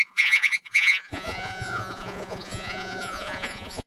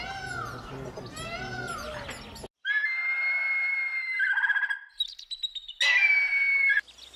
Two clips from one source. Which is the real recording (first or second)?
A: second